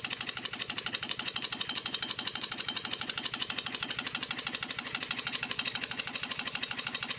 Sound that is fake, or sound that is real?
fake